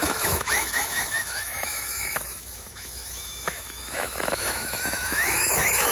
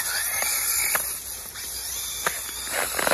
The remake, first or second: first